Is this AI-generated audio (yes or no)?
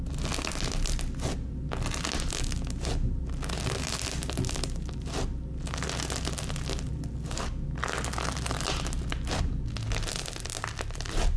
no